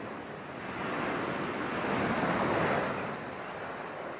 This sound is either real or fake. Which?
real